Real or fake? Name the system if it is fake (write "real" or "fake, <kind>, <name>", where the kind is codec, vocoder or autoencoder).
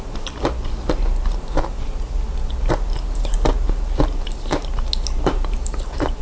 real